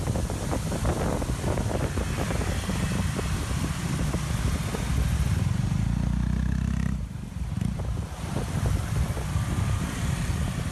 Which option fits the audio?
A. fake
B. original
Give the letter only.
B